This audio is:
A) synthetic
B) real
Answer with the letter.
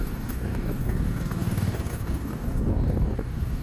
A